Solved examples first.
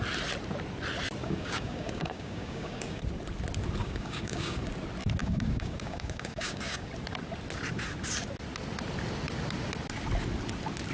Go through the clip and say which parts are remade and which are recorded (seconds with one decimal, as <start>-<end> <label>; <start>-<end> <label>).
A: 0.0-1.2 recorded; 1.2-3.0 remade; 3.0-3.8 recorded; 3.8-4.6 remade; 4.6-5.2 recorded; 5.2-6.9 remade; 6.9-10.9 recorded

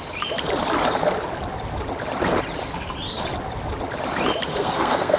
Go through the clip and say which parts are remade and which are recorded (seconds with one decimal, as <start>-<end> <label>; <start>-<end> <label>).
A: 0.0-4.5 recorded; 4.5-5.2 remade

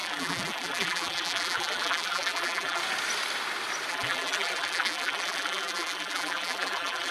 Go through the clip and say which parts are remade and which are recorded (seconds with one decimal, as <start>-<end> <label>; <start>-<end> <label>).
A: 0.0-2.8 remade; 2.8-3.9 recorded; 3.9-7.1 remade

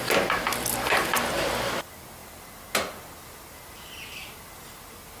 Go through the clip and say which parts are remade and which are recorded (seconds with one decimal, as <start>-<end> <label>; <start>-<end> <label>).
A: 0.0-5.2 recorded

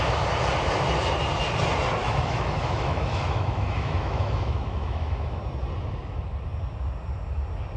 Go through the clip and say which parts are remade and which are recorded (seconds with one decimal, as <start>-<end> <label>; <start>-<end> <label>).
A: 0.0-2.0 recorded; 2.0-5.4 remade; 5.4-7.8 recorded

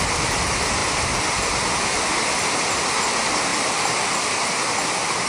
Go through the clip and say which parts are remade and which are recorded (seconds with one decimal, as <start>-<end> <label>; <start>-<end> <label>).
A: 0.0-3.5 recorded; 3.5-4.1 remade; 4.1-5.3 recorded